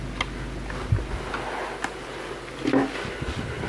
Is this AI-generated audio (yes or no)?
no